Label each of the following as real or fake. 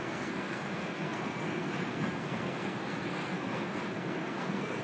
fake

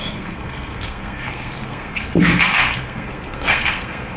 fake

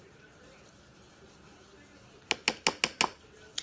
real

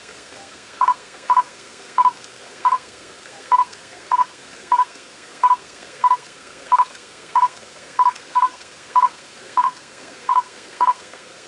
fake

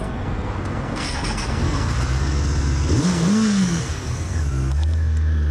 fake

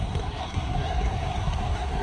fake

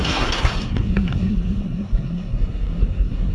fake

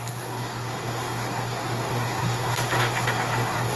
fake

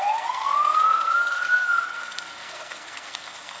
fake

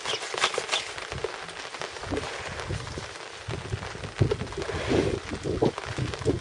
real